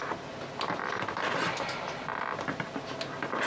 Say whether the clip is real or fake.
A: real